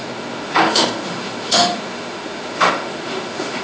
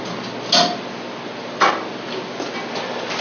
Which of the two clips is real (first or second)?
second